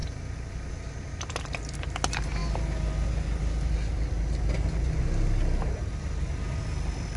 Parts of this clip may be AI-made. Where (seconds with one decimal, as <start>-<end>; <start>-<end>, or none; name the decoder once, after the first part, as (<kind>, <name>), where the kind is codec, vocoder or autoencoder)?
none